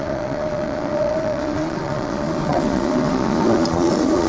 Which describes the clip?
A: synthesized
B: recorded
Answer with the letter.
A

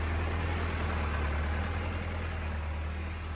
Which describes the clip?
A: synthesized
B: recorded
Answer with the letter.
B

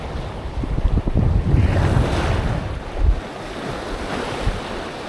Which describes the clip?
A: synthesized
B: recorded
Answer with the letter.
B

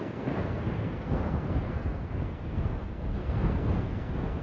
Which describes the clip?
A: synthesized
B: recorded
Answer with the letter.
A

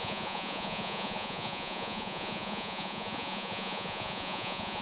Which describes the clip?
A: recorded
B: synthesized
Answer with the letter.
B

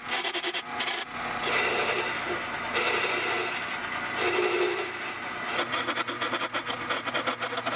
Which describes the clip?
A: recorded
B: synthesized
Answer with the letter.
A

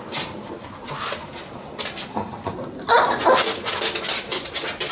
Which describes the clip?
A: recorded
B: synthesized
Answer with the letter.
A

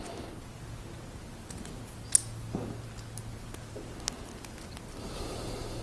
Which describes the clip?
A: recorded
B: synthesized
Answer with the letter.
A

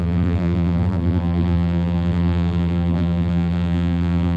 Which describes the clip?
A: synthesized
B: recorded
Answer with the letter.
A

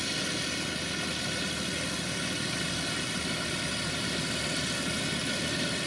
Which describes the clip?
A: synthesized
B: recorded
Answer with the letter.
B